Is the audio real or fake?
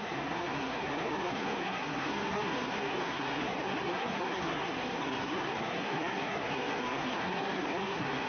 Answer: fake